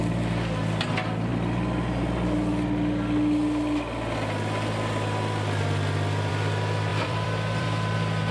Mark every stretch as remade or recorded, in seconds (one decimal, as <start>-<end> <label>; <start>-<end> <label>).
0.0-6.9 recorded; 6.9-8.3 remade